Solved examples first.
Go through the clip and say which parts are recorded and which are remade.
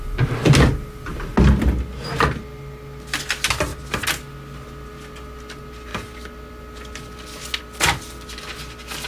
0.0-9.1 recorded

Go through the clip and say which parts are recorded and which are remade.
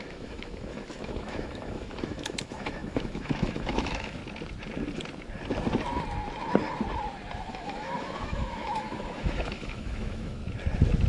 0.0-4.2 remade; 4.2-7.5 recorded; 7.5-10.4 remade; 10.4-11.1 recorded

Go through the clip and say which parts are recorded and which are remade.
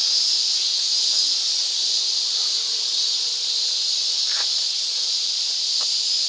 0.0-2.9 recorded; 2.9-3.4 remade; 3.4-6.3 recorded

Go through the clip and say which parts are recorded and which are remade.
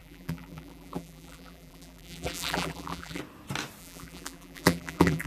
0.0-3.2 remade; 3.2-3.8 recorded; 3.8-5.3 remade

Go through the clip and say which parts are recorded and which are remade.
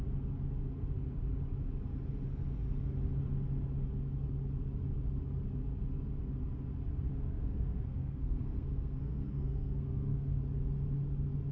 0.0-7.1 recorded; 7.1-10.4 remade; 10.4-11.5 recorded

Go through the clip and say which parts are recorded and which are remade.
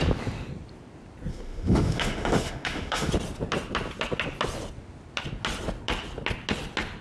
0.0-1.3 recorded; 1.3-3.1 remade; 3.1-7.0 recorded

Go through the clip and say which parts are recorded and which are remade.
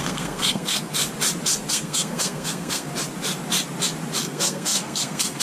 0.0-1.0 remade; 1.0-1.7 recorded; 1.7-2.9 remade; 2.9-4.2 recorded; 4.2-5.4 remade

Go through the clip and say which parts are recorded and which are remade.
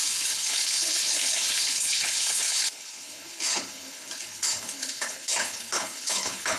0.0-6.6 remade